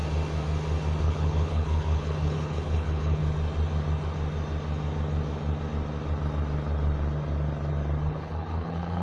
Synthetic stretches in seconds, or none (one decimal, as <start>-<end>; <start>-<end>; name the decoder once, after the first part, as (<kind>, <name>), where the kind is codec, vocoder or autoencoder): 1.0-3.2 (codec, HILCodec); 8.1-9.0